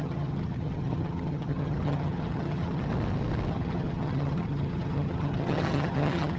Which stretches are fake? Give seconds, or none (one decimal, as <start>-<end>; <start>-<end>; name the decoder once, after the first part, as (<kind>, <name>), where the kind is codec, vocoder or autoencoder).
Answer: 0.0-2.9 (vocoder, HiFi-GAN); 3.5-6.4